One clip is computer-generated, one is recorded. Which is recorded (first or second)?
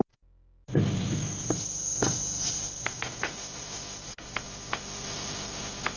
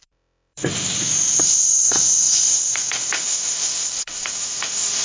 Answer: first